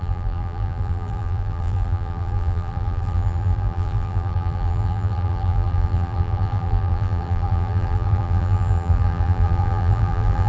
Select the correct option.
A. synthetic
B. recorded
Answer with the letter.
A